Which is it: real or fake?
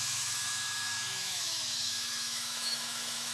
fake